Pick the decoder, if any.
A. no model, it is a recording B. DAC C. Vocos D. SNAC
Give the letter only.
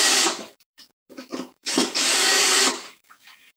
B